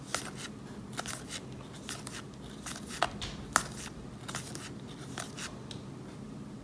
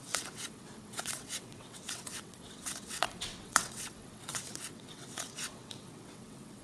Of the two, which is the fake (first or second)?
second